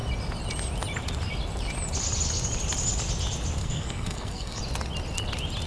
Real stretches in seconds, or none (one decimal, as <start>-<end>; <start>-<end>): 0.0-3.6; 4.6-5.7